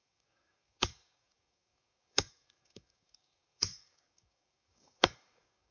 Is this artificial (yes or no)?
yes